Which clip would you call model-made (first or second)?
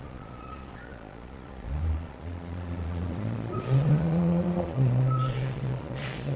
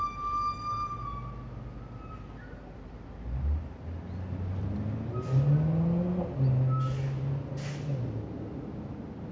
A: first